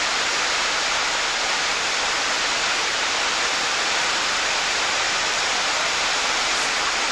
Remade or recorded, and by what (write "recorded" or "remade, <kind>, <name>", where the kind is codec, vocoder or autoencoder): remade, vocoder, BigVGAN v2